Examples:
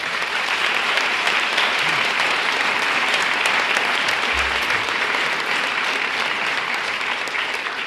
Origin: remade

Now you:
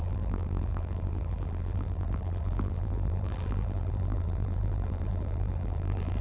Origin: remade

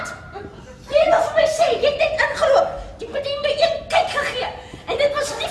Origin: recorded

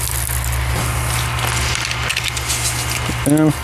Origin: recorded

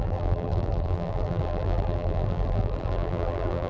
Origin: remade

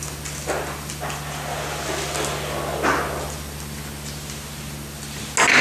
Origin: recorded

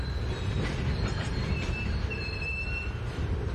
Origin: remade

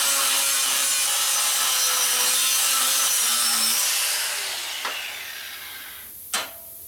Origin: recorded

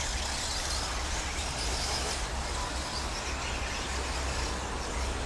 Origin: recorded